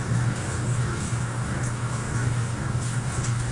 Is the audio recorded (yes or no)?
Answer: no